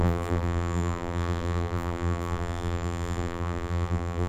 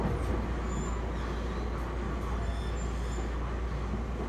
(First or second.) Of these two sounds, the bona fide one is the second